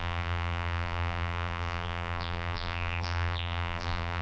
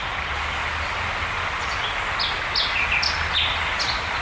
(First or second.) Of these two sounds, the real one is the second